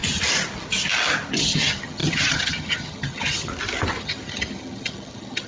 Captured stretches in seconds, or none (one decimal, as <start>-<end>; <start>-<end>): 0.0-1.4; 3.5-4.0